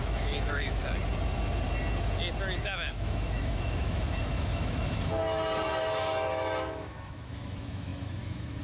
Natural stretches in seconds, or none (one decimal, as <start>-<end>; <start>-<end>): 0.8-2.6